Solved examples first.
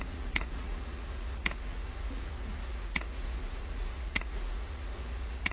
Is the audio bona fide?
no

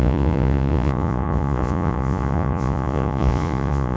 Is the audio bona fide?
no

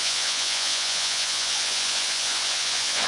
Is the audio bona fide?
no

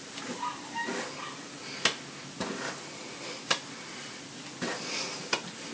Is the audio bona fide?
yes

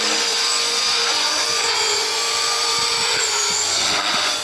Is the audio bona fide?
no